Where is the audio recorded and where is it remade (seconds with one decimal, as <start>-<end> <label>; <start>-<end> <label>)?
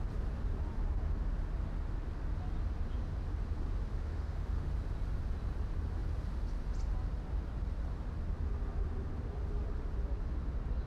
0.0-3.9 recorded; 3.9-4.7 remade; 4.7-10.9 recorded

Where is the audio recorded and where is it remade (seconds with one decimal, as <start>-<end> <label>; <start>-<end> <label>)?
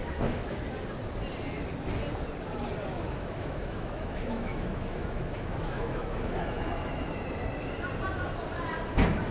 0.0-0.6 remade; 0.6-2.9 recorded; 2.9-7.2 remade; 7.2-9.3 recorded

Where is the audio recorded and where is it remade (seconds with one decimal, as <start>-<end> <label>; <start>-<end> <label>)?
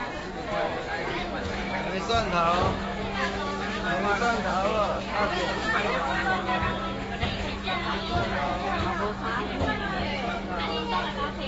0.0-0.8 recorded; 0.8-11.5 remade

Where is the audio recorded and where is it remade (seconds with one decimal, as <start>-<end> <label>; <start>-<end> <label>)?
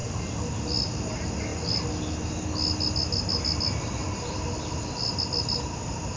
0.0-6.2 recorded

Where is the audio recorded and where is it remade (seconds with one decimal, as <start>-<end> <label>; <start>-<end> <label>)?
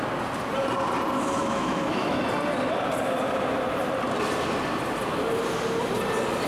0.0-1.4 recorded; 1.4-2.2 remade; 2.2-6.5 recorded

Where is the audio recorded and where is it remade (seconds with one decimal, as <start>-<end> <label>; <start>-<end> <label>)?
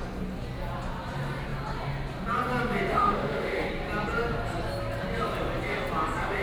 0.0-2.9 recorded; 2.9-3.7 remade; 3.7-6.4 recorded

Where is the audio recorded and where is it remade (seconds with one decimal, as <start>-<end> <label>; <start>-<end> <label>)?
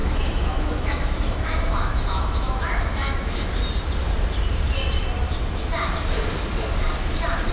0.0-3.5 remade; 3.5-7.5 recorded